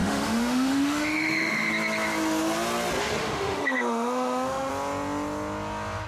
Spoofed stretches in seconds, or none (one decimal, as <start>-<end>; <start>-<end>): 0.0-1.7; 3.2-4.7